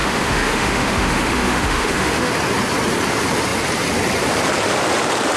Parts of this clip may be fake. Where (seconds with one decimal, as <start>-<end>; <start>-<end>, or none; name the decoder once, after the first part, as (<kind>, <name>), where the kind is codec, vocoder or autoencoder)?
0.0-2.3 (autoencoder, DAC-VAE)

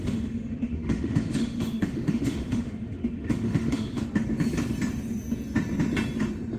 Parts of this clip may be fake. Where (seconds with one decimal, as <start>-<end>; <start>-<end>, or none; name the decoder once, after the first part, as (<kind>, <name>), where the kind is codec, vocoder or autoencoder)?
0.0-4.0 (autoencoder, DAC-VAE)

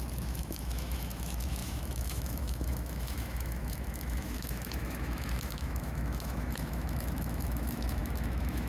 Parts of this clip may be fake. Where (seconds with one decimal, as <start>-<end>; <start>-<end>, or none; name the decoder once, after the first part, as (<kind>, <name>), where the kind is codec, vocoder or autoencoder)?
0.0-8.7 (autoencoder, DAC-VAE)

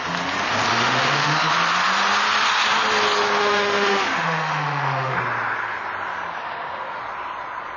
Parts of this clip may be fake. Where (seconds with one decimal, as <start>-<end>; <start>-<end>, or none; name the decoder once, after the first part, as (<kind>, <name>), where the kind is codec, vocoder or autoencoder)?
0.7-1.5 (autoencoder, DAC-VAE); 3.4-5.2; 6.4-7.0